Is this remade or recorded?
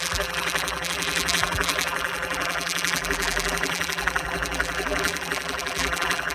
remade